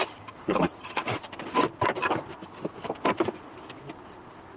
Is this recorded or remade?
recorded